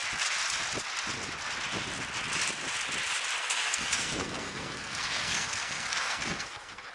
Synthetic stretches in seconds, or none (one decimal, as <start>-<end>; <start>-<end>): 3.4-6.9